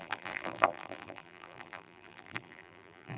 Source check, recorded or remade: remade